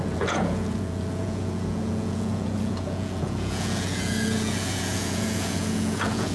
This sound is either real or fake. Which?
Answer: fake